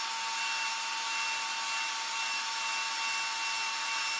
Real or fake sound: real